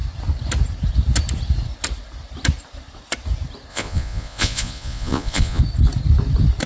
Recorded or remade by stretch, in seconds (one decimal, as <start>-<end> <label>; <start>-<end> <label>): 0.0-3.7 recorded; 3.7-5.6 remade; 5.6-6.7 recorded